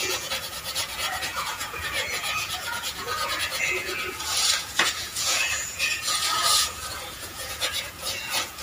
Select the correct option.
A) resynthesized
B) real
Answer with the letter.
A